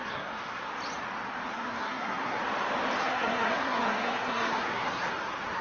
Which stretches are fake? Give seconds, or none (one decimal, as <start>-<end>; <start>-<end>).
0.0-0.7; 1.5-2.4; 3.0-5.6